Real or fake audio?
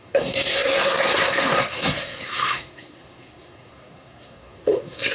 fake